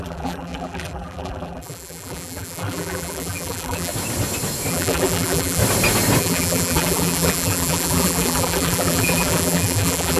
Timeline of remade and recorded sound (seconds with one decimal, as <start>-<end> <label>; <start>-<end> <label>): 0.0-3.9 remade; 3.9-4.7 recorded; 4.7-5.6 remade; 5.6-6.2 recorded; 6.2-10.2 remade